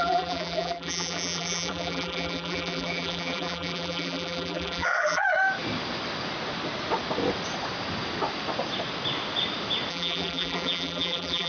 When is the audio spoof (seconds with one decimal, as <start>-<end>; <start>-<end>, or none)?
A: 0.0-5.3; 9.9-11.5